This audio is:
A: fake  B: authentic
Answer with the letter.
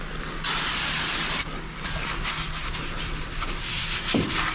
B